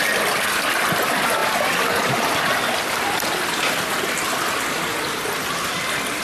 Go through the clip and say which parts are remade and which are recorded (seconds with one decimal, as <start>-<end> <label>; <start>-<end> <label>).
0.0-6.2 recorded

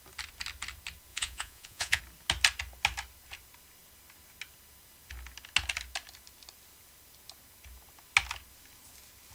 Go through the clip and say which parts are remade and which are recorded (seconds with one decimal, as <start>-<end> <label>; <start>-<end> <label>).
0.0-1.1 recorded; 1.1-2.0 remade; 2.0-9.3 recorded

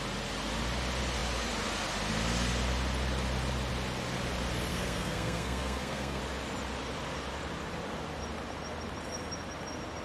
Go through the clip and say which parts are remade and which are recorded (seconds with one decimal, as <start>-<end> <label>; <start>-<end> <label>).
0.0-4.7 recorded; 4.7-6.2 remade; 6.2-10.0 recorded

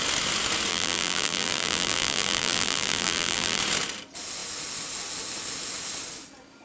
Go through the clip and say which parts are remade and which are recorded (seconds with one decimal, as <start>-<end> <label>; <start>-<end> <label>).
0.0-0.7 recorded; 0.7-3.6 remade; 3.6-6.6 recorded

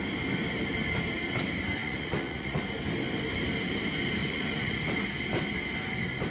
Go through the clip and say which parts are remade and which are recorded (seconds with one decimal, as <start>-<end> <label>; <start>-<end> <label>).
0.0-1.8 recorded; 1.8-2.6 remade; 2.6-4.2 recorded; 4.2-4.9 remade; 4.9-6.3 recorded

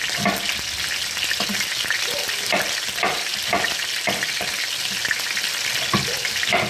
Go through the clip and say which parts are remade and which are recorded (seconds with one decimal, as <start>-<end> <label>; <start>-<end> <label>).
0.0-6.7 recorded

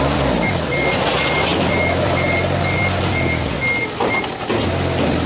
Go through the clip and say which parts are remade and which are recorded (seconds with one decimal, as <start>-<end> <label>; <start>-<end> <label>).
0.0-5.3 recorded